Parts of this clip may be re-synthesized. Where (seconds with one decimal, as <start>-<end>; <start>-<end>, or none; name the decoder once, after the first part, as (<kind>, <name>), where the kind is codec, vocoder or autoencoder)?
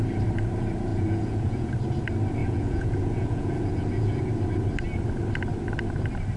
0.9-1.7 (vocoder, Vocos); 2.4-4.3